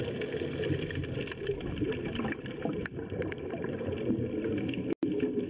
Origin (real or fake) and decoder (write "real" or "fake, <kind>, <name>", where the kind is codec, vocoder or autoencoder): real